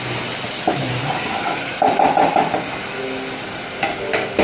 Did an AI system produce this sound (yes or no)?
no